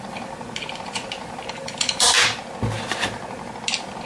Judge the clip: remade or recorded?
recorded